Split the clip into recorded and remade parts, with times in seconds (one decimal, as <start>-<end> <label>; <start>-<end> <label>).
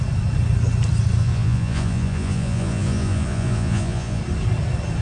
0.0-1.2 recorded; 1.2-4.2 remade; 4.2-5.0 recorded